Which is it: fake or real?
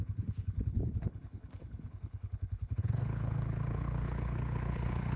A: fake